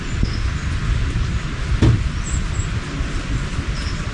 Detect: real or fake real